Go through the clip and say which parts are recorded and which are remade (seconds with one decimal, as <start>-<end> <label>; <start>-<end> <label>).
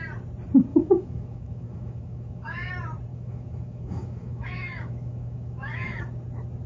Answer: 0.0-0.7 recorded; 0.7-2.7 remade; 2.7-3.1 recorded; 3.1-6.0 remade; 6.0-6.7 recorded